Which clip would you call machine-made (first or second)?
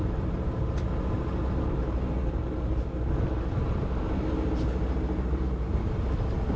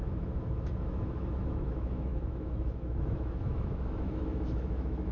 second